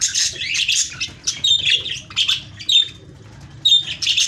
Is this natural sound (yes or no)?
yes